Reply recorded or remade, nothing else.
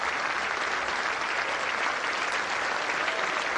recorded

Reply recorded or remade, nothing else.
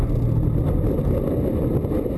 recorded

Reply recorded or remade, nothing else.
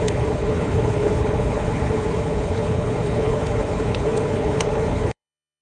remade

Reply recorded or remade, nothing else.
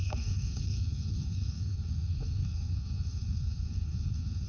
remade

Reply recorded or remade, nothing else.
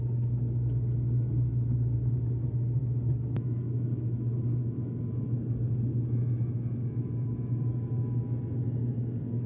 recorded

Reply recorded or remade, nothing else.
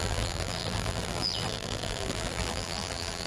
remade